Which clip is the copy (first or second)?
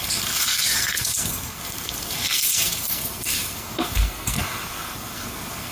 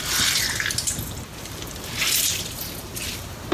first